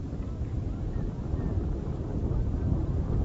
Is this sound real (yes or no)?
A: yes